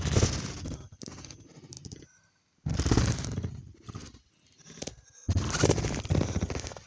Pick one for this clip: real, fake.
real